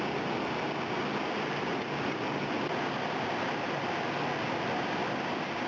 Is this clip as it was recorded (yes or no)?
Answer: yes